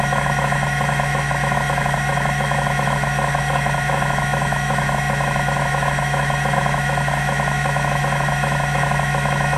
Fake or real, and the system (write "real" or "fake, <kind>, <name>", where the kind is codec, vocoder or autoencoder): fake, autoencoder, DAC-VAE